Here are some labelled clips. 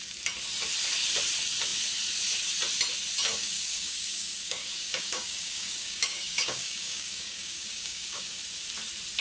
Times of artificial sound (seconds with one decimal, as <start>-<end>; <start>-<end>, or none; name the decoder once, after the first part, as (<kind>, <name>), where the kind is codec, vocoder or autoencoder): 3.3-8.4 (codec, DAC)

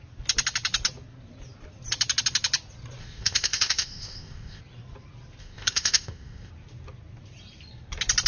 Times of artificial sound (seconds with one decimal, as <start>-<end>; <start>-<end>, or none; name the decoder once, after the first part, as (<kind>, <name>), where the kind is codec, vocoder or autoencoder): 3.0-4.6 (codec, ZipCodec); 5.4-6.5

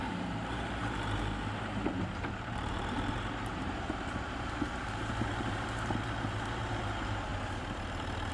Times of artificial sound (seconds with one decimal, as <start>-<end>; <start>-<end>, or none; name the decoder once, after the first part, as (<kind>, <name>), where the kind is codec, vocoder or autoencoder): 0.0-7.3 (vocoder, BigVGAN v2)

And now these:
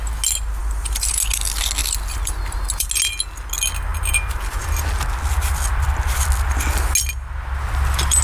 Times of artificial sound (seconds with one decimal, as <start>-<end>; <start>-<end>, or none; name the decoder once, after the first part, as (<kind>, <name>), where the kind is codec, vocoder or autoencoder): 0.6-1.1 (vocoder, BigVGAN v2); 1.8-2.9; 3.9-4.8; 5.7-6.3

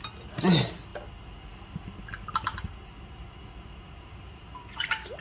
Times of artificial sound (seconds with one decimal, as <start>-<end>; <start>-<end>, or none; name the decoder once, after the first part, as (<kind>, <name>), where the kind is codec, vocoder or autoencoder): none

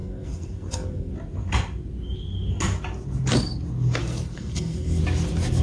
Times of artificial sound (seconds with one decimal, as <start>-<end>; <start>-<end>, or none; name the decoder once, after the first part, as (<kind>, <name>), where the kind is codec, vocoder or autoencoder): 0.0-1.1 (codec, SNAC); 4.0-5.0

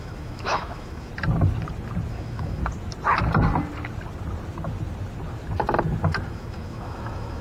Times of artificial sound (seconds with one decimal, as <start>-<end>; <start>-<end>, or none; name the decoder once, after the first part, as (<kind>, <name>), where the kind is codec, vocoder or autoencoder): 0.0-1.1 (autoencoder, DAC-VAE); 2.1-2.6; 6.3-7.4

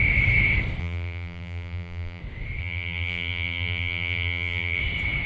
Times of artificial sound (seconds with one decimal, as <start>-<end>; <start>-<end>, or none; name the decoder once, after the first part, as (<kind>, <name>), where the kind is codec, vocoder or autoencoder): 0.8-2.2 (vocoder, BigVGAN v2); 2.6-4.8